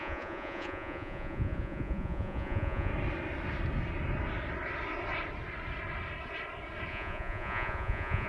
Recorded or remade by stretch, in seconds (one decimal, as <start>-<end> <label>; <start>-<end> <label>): 0.0-2.9 remade; 2.9-6.9 recorded; 6.9-8.3 remade